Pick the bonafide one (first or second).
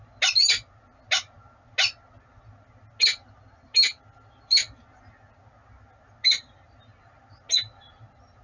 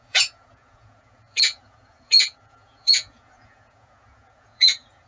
first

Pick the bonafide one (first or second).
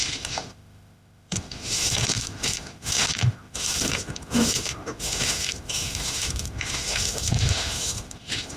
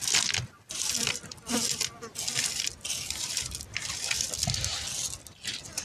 second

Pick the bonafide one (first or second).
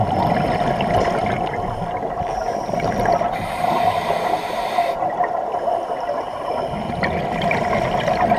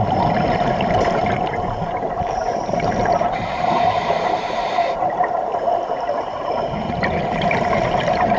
first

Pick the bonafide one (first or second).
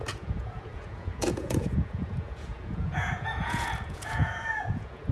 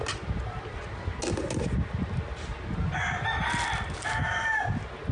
second